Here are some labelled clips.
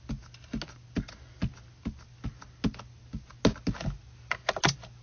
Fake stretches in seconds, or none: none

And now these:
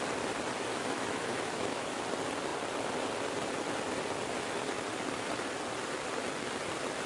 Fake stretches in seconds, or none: 0.7-2.0 (autoencoder, DAC-VAE)

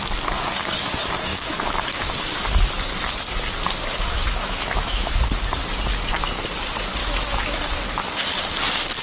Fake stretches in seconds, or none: 1.3-2.1 (autoencoder, DAC-VAE); 4.2-5.2; 7.0-7.6

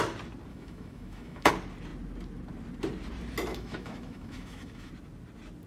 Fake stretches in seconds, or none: 0.5-1.5 (autoencoder, DAC-VAE); 3.5-4.9